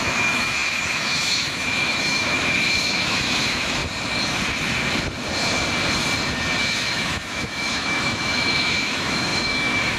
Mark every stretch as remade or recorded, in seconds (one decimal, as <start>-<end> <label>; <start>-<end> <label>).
0.0-3.8 remade; 3.8-6.6 recorded; 6.6-10.0 remade